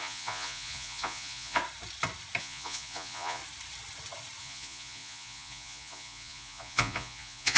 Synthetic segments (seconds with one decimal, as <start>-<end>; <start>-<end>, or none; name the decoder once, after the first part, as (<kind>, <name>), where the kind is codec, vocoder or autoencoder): 0.0-1.6 (vocoder, Vocos); 2.4-3.4; 4.4-7.6